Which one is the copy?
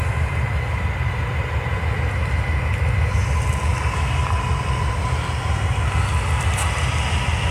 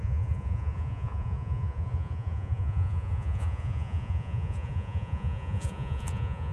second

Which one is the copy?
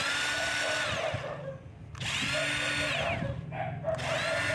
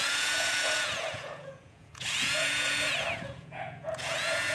second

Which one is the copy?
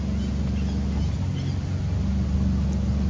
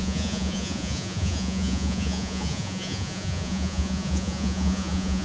second